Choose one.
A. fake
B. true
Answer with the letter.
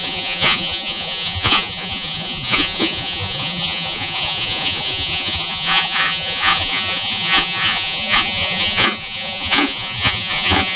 A